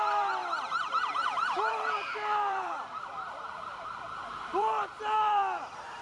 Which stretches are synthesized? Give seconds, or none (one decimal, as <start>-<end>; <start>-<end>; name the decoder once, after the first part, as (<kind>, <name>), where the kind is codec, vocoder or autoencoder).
0.0-0.4 (vocoder, BigVGAN v2); 1.7-6.0